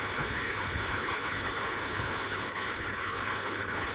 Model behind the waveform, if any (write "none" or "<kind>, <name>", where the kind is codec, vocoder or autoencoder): codec, HILCodec